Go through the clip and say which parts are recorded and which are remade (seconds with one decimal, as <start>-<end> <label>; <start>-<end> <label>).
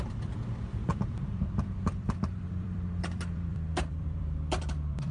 0.0-5.1 remade